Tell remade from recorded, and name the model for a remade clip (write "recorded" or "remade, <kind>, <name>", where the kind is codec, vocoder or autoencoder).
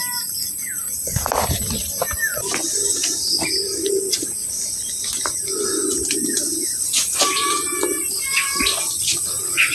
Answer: remade, vocoder, BigVGAN v2